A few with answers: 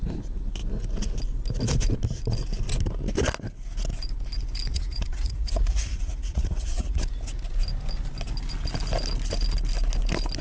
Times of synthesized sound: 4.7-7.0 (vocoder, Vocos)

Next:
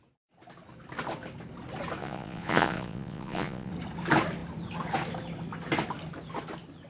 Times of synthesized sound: 2.0-3.7 (vocoder, Vocos)

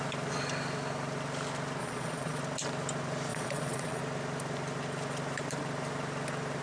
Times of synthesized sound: 1.8-2.4 (vocoder, Vocos); 3.3-4.0

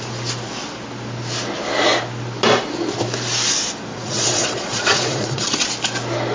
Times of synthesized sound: 3.9-5.7 (vocoder, Vocos)

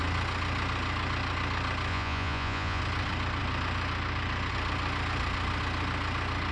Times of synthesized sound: 1.9-2.8 (vocoder, Vocos)